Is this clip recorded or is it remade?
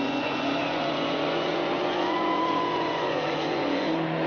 remade